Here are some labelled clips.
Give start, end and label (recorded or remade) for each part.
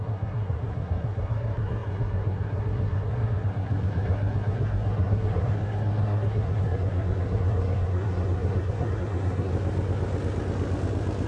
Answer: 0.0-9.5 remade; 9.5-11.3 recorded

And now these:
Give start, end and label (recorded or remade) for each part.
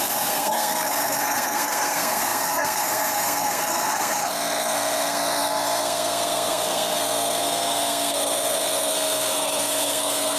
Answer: 0.0-10.4 remade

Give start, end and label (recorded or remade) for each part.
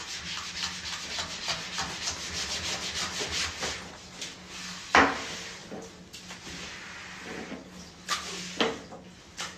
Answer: 0.0-9.6 recorded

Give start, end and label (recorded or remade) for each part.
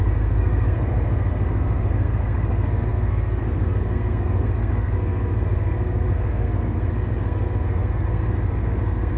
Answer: 0.0-9.2 remade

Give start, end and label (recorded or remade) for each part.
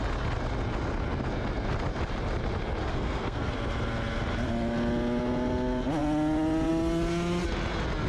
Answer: 0.0-2.9 recorded; 2.9-3.5 remade; 3.5-8.1 recorded